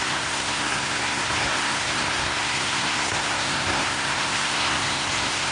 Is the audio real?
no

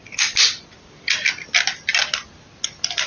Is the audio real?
yes